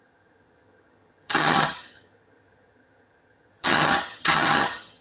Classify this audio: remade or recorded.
remade